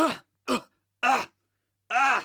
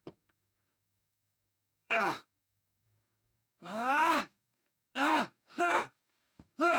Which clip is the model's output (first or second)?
second